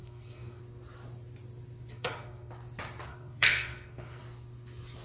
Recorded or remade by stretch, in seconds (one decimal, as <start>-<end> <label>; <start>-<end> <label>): 0.0-0.6 remade; 0.6-1.9 recorded; 1.9-2.5 remade; 2.5-3.1 recorded; 3.1-4.2 remade; 4.2-5.0 recorded